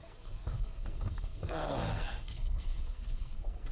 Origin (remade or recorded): remade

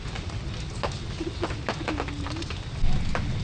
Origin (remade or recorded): recorded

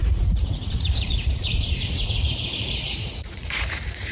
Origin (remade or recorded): remade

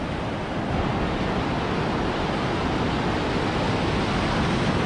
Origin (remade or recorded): recorded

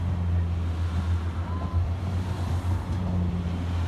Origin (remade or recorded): recorded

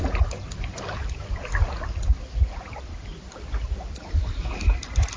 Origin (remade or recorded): recorded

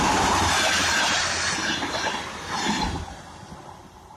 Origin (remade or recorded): remade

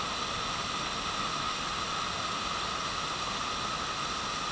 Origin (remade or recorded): recorded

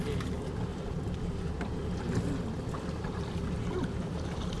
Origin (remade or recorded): recorded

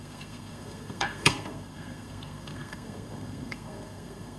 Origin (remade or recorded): remade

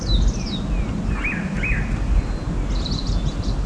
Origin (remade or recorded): recorded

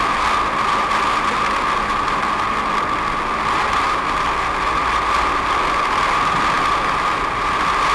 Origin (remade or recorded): recorded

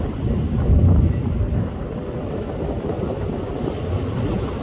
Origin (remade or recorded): recorded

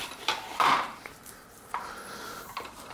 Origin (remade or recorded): remade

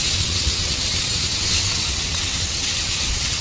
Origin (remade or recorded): remade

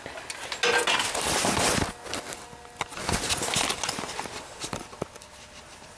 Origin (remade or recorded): recorded